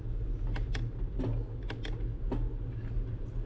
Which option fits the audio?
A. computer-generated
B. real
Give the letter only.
B